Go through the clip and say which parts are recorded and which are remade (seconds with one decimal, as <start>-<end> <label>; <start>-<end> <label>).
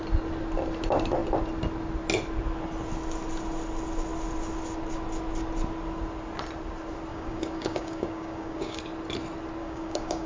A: 0.0-7.1 recorded; 7.1-8.8 remade; 8.8-9.6 recorded; 9.6-10.3 remade